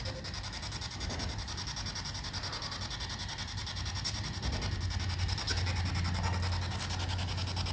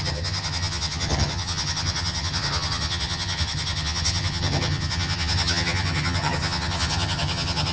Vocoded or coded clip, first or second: second